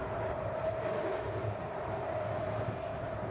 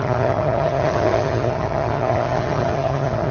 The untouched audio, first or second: first